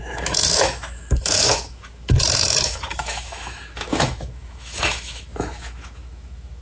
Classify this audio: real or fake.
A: fake